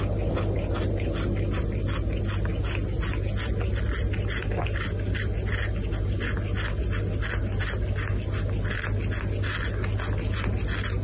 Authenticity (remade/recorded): recorded